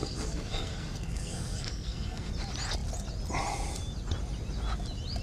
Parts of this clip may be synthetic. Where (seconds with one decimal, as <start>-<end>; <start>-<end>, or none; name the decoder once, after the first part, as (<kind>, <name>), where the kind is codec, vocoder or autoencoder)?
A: 0.0-2.3 (codec, SNAC)